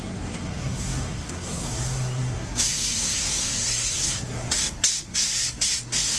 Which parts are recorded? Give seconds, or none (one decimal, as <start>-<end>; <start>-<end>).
none